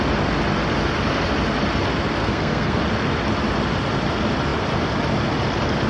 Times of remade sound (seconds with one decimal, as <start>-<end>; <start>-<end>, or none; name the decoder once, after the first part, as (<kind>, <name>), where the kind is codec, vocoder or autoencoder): 2.2-2.8 (codec, SNAC)

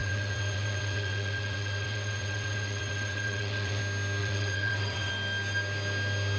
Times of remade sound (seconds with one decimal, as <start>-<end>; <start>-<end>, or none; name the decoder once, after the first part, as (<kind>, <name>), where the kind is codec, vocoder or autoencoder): 0.0-3.8 (vocoder, WaveNeXt); 4.2-5.1